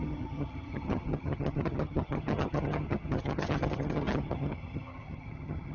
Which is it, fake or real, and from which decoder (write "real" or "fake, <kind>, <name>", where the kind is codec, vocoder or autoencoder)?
fake, vocoder, HiFi-GAN